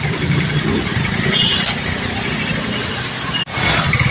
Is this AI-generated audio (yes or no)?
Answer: no